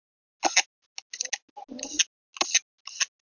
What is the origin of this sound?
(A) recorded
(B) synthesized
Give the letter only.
A